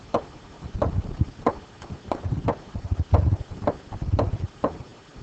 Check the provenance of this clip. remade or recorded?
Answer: recorded